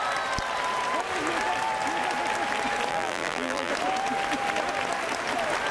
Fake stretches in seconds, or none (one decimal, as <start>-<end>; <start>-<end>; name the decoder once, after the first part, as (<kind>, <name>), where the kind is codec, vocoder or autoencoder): 2.9-3.7 (vocoder, BigVGAN v2)